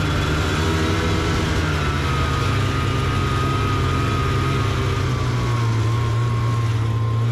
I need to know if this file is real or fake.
real